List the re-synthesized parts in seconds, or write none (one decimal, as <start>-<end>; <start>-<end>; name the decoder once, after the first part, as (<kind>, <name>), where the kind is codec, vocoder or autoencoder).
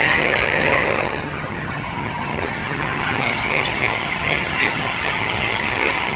0.0-6.2 (vocoder, HiFi-GAN)